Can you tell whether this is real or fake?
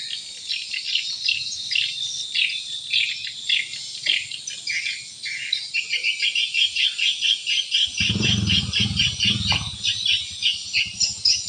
real